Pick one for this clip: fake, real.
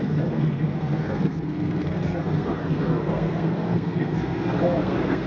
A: fake